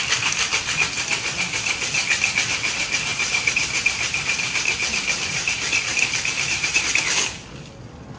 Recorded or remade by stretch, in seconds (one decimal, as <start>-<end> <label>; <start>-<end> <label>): 0.0-3.1 recorded; 3.1-6.8 remade; 6.8-8.2 recorded